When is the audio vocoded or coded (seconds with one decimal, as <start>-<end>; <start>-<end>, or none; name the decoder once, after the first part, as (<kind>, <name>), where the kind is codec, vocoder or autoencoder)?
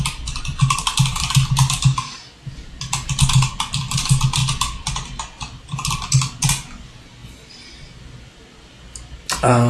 none